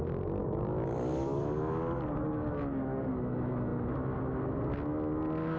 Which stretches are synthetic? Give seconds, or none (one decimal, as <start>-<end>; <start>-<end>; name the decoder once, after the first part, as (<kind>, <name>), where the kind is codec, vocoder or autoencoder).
0.4-3.1 (codec, DAC)